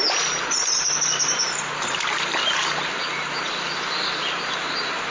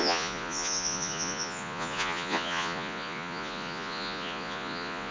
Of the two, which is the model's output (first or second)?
second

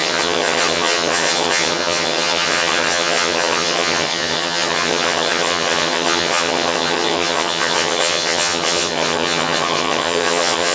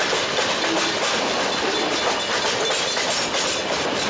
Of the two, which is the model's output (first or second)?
first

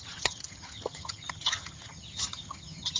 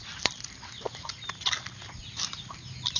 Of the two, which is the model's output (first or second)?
first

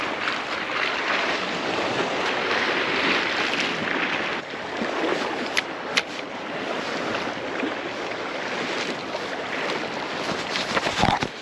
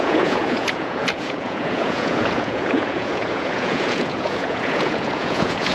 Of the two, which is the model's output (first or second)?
second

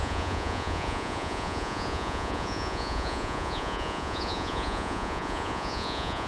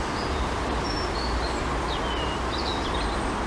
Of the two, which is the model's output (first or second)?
first